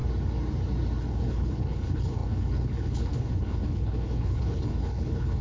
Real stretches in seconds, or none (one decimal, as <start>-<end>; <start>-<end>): 0.0-1.0